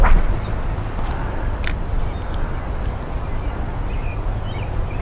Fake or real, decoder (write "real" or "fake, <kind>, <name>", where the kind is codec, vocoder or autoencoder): real